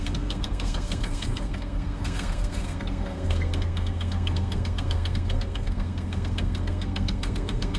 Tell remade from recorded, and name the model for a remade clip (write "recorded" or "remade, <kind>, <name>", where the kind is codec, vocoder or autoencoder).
remade, codec, SNAC